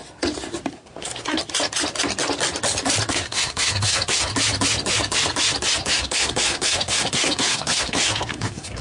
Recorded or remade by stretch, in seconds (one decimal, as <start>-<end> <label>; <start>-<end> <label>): 0.0-0.7 recorded; 0.7-1.4 remade; 1.4-3.1 recorded; 3.1-4.3 remade; 4.3-5.8 recorded; 5.8-8.8 remade

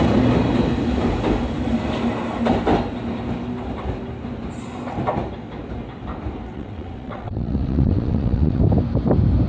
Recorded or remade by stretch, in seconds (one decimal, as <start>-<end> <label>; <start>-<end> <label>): 0.0-6.5 recorded; 6.5-8.6 remade; 8.6-9.5 recorded

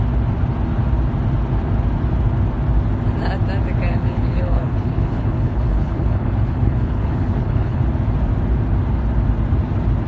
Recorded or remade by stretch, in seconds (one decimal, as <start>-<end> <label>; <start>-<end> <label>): 0.0-3.9 recorded; 3.9-7.8 remade; 7.8-10.1 recorded

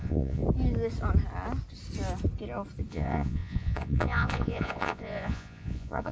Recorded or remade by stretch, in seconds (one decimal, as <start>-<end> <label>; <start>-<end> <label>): 0.0-0.4 remade; 0.4-2.9 recorded; 2.9-6.1 remade